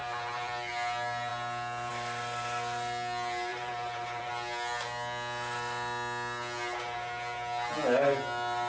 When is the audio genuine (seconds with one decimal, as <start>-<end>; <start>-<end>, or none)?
0.7-3.5; 4.3-8.7